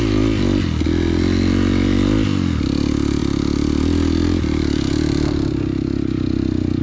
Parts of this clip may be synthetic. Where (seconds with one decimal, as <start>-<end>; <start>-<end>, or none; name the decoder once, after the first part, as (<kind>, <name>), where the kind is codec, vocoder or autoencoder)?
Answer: none